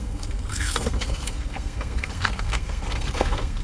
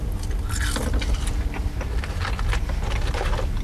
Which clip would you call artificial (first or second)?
first